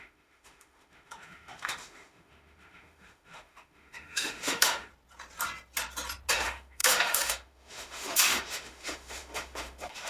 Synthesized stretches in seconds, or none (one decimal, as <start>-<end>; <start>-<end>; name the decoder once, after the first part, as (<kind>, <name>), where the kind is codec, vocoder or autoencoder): 0.0-4.9 (autoencoder, DAC-VAE); 6.3-10.1